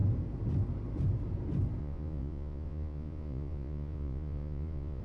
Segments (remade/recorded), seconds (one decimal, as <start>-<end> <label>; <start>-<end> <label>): 0.0-1.8 recorded; 1.8-5.0 remade